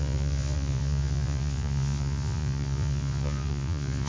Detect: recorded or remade remade